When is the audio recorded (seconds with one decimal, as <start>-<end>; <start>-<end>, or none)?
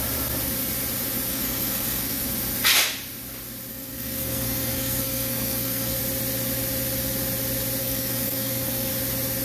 0.0-1.3; 2.3-3.7; 6.0-7.8; 8.9-9.4